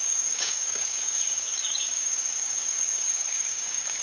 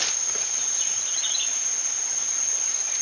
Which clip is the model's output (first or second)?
first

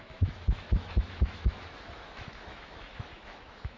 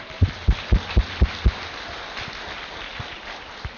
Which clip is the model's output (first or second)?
first